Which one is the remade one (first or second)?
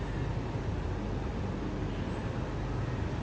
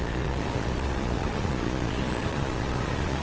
second